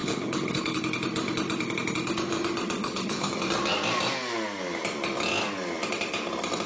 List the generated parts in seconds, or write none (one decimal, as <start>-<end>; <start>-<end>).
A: 0.0-0.8; 2.8-3.3

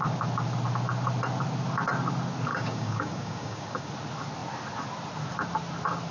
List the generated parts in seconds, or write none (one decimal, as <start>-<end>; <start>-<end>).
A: 2.5-3.9

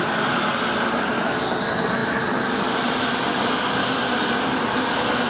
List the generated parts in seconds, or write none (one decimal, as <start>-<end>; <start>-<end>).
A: none

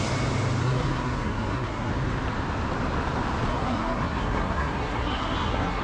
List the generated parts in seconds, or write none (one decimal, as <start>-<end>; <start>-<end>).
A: 0.6-1.9; 3.5-5.8

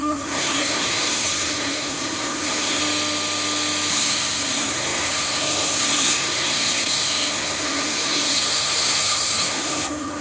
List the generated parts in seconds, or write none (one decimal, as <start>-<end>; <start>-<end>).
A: 0.0-2.8; 3.9-10.2

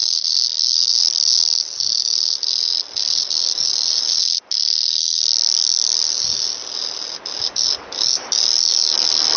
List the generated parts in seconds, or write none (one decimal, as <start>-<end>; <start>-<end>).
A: none

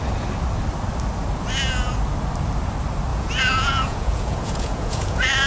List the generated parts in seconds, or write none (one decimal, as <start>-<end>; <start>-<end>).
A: 3.1-5.5